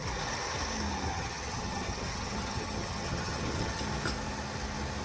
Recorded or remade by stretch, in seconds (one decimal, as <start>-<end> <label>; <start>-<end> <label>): 0.0-1.1 recorded; 1.1-3.8 remade; 3.8-5.0 recorded